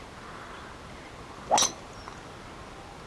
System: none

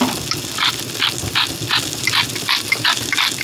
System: none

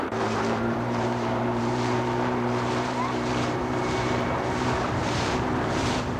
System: vocoder, BigVGAN v2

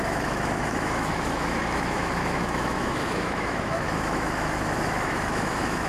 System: autoencoder, DAC-VAE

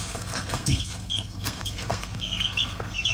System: codec, SNAC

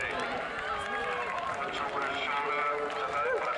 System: none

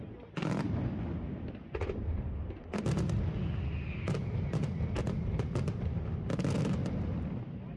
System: none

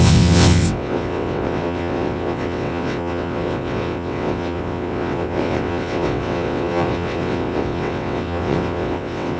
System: vocoder, WaveNeXt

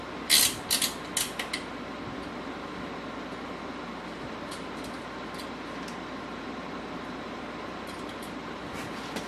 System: none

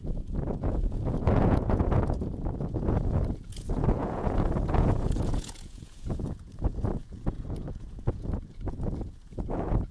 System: vocoder, Vocos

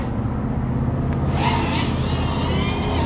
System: none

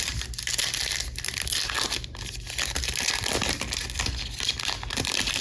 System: none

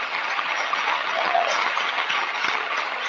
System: vocoder, HiFi-GAN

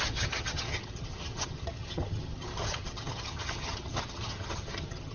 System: vocoder, HiFi-GAN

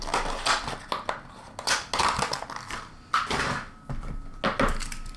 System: none